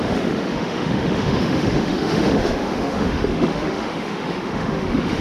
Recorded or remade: remade